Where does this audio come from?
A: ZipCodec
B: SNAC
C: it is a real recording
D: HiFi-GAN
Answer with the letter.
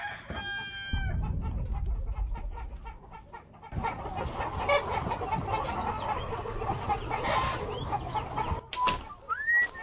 C